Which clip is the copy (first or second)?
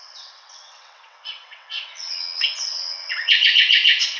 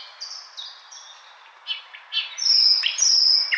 first